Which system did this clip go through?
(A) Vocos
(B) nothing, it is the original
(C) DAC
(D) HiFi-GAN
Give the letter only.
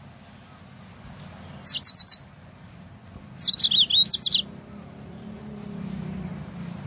B